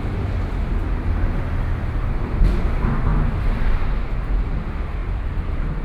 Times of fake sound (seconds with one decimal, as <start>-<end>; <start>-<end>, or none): 5.0-5.8